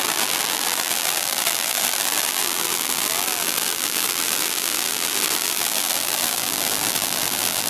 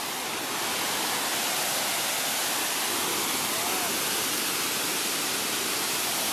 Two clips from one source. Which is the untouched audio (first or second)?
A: second